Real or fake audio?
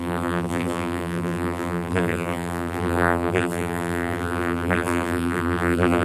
fake